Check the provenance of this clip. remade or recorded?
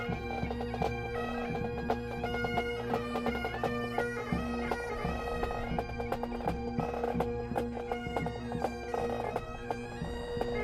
recorded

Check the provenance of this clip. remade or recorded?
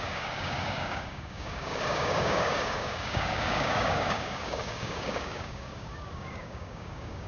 remade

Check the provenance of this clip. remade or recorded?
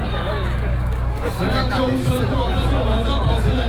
remade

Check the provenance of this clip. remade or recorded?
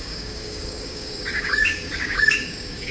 remade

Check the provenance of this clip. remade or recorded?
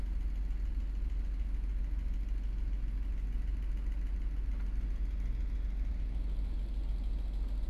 recorded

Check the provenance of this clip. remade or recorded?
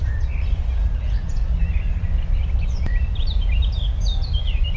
recorded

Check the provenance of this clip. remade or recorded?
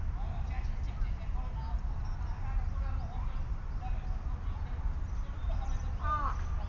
recorded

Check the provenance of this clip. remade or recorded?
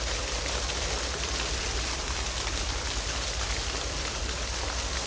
recorded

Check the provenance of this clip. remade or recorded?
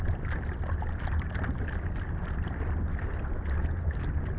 recorded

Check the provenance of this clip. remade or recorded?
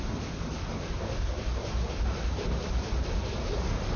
recorded